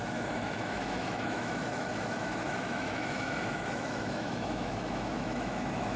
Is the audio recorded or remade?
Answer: remade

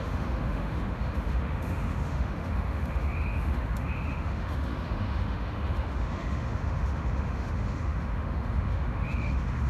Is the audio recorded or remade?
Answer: remade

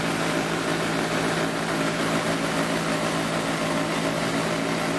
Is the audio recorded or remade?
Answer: recorded